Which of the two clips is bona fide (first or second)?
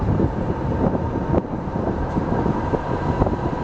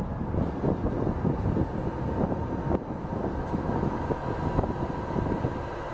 second